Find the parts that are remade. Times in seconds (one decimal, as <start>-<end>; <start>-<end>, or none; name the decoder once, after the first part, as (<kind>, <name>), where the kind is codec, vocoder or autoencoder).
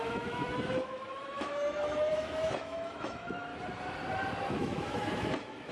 0.0-3.5 (autoencoder, DAC-VAE); 4.5-5.7